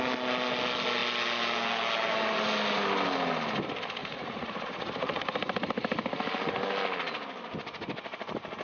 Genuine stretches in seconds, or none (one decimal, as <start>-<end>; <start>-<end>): 0.0-4.0; 5.2-8.6